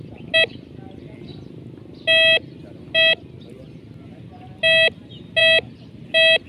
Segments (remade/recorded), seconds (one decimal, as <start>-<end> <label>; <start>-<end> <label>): 0.0-6.5 recorded